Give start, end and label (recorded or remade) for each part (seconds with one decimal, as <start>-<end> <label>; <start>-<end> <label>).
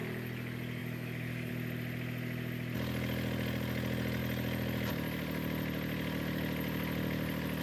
0.0-0.8 recorded; 0.8-1.5 remade; 1.5-7.6 recorded